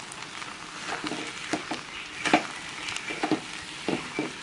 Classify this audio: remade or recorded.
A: recorded